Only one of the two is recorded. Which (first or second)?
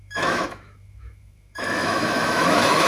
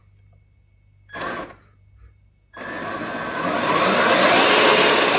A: second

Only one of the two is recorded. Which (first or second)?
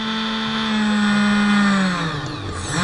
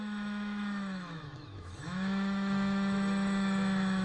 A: first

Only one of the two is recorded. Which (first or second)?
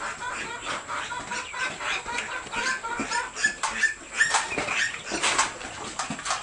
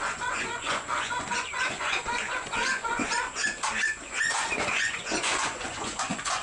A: first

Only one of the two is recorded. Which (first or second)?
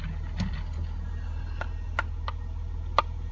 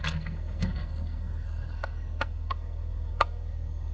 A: first